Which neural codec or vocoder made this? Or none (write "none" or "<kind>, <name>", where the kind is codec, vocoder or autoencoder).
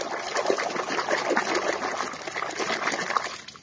none